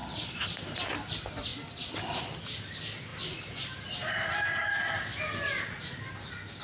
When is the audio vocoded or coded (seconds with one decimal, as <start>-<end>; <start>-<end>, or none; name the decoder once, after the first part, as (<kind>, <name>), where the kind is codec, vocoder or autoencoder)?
none